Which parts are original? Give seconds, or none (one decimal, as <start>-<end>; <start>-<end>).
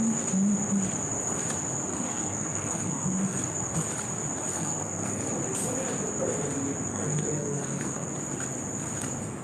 0.0-1.9; 3.4-4.5; 5.3-6.9; 8.1-9.4